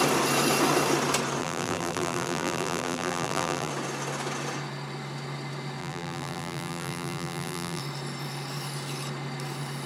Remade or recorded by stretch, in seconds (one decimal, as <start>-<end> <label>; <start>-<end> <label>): 0.0-1.4 recorded; 1.4-3.7 remade; 3.7-5.8 recorded; 5.8-7.8 remade; 7.8-9.9 recorded

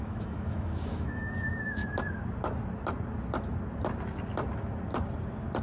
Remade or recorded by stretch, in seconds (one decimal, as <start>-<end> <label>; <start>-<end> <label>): 0.0-1.8 remade; 1.8-5.6 recorded

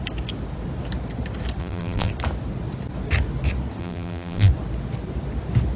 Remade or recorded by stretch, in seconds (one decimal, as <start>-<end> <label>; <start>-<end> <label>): 0.0-1.6 recorded; 1.6-2.1 remade; 2.1-3.8 recorded; 3.8-4.5 remade; 4.5-5.8 recorded

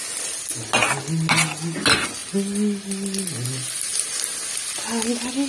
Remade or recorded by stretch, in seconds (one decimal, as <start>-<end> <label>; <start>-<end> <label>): 0.0-5.5 recorded

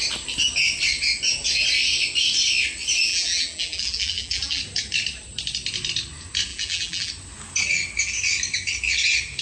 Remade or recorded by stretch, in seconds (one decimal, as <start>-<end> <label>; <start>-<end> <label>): 0.0-3.1 recorded; 3.1-4.6 remade; 4.6-6.5 recorded; 6.5-7.1 remade; 7.1-9.4 recorded

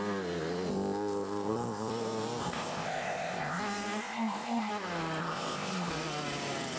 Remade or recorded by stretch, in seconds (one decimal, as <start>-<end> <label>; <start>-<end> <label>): 0.0-0.7 recorded; 0.7-1.9 remade; 1.9-2.4 recorded; 2.4-3.6 remade; 3.6-4.0 recorded; 4.0-4.7 remade; 4.7-5.2 recorded; 5.2-5.9 remade; 5.9-6.8 recorded